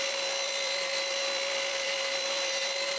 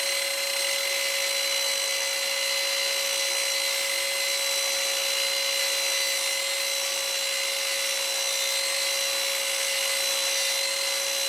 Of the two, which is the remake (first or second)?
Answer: first